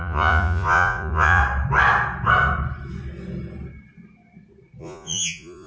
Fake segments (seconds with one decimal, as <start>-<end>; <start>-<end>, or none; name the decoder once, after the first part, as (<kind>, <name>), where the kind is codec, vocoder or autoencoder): 0.0-1.4 (vocoder, Vocos); 4.8-5.7